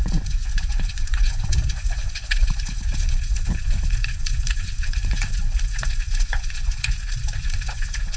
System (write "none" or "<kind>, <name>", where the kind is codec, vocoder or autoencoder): vocoder, Vocos